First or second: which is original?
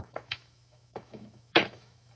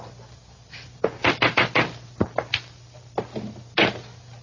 second